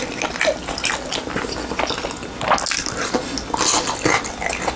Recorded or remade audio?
recorded